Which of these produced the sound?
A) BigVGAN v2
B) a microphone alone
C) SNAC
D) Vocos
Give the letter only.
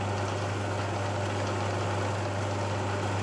B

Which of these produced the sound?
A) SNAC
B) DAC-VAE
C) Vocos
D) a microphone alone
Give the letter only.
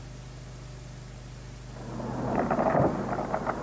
D